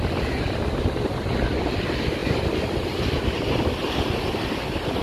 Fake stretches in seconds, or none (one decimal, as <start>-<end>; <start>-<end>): none